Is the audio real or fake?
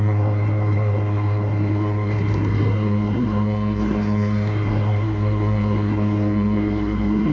fake